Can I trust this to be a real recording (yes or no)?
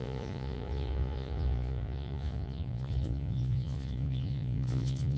no